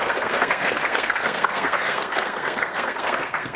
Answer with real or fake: fake